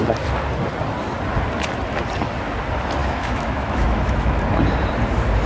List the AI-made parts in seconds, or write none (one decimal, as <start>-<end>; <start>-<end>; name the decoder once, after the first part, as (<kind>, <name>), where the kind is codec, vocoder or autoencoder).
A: 3.0-4.4 (autoencoder, DAC-VAE)